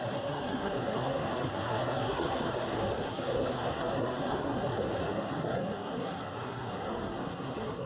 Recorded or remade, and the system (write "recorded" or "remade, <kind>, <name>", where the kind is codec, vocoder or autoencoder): remade, codec, SNAC